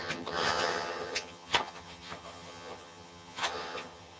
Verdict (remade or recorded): remade